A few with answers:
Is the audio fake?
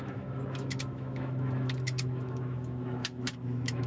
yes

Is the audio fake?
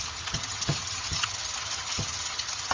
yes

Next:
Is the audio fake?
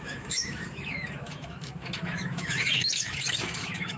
yes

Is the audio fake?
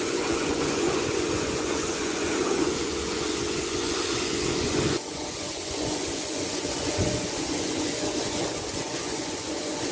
yes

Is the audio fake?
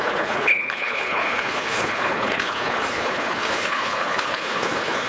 yes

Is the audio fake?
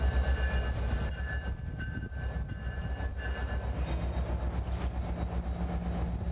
no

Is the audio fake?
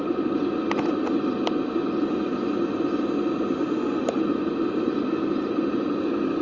no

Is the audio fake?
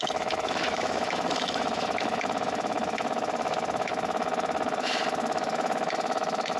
yes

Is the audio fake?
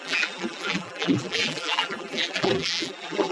yes